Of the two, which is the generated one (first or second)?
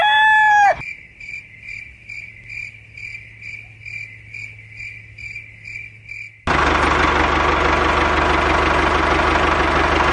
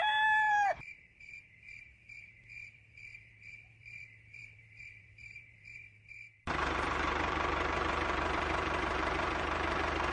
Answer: second